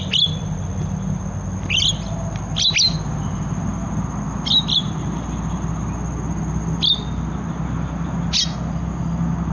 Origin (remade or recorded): recorded